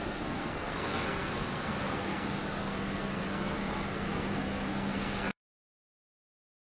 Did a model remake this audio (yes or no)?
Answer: yes